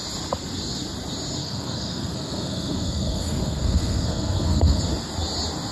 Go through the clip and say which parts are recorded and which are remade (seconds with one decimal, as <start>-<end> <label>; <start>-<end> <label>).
0.0-1.4 recorded; 1.4-4.8 remade; 4.8-5.7 recorded

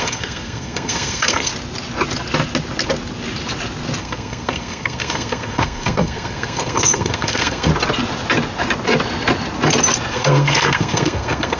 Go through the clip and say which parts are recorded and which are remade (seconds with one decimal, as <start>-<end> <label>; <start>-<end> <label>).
0.0-1.5 remade; 1.5-4.0 recorded; 4.0-7.7 remade; 7.7-10.1 recorded; 10.1-11.6 remade

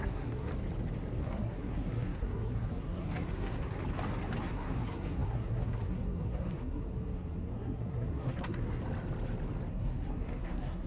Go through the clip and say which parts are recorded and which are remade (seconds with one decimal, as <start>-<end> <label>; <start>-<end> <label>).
0.0-0.5 remade; 0.5-1.2 recorded; 1.2-3.8 remade; 3.8-4.4 recorded; 4.4-8.8 remade; 8.8-9.7 recorded; 9.7-10.9 remade